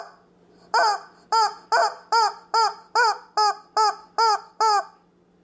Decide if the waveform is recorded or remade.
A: recorded